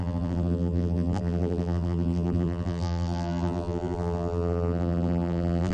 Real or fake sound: fake